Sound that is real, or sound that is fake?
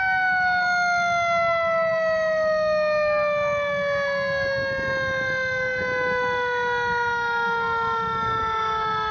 real